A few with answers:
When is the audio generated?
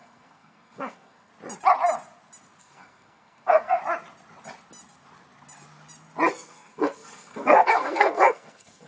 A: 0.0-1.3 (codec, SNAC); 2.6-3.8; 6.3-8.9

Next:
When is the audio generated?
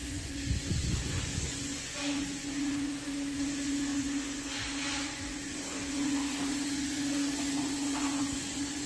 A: 0.0-8.9 (vocoder, Vocos)